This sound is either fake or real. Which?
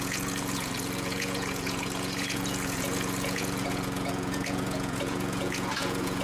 fake